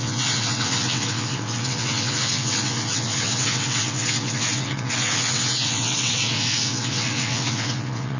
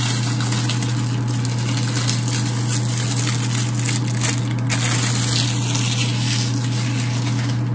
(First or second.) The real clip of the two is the second